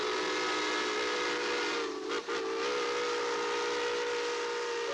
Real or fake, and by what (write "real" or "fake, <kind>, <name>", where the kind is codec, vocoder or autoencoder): real